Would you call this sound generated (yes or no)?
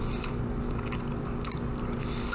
no